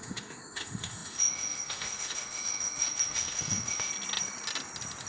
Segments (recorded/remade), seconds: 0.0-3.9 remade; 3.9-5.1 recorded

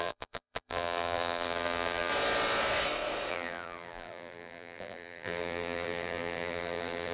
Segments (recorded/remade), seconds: 0.0-2.1 remade; 2.1-3.3 recorded; 3.3-7.1 remade

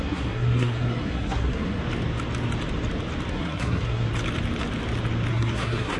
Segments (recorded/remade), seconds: 0.0-1.8 remade; 1.8-3.3 recorded; 3.3-4.1 remade; 4.1-5.3 recorded; 5.3-6.0 remade

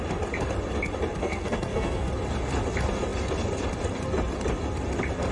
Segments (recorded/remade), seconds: 0.0-1.2 recorded; 1.2-2.1 remade; 2.1-5.3 recorded

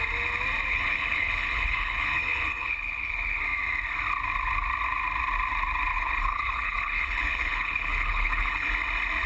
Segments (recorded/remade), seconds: 0.0-0.7 recorded; 0.7-3.4 remade; 3.4-5.9 recorded; 5.9-8.7 remade; 8.7-9.3 recorded

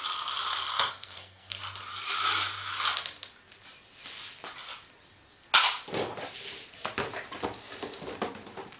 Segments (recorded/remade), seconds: 0.0-0.7 recorded; 0.7-1.6 remade; 1.6-8.8 recorded

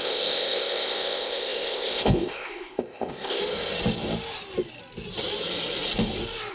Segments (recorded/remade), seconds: 0.0-3.4 remade; 3.4-6.5 recorded